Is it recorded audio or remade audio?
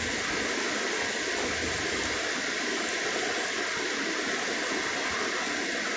recorded